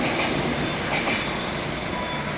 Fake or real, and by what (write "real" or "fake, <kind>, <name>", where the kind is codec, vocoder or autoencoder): real